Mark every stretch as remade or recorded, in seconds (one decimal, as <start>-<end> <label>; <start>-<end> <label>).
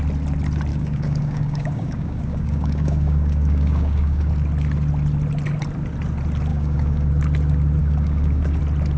0.0-0.7 recorded; 0.7-4.3 remade; 4.3-6.5 recorded; 6.5-7.1 remade; 7.1-7.8 recorded; 7.8-8.6 remade; 8.6-9.0 recorded